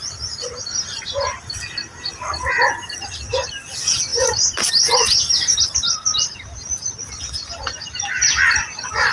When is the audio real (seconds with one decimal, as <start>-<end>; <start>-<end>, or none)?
0.0-9.1